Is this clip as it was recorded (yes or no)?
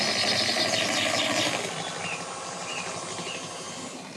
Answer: yes